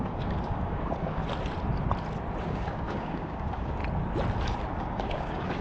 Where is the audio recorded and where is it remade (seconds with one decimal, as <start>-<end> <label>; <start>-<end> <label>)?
0.0-1.2 remade; 1.2-2.4 recorded; 2.4-3.8 remade; 3.8-4.8 recorded; 4.8-5.6 remade